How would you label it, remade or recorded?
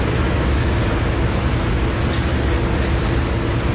recorded